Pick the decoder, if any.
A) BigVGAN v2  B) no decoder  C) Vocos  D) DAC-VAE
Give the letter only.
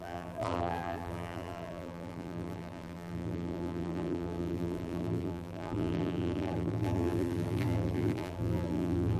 A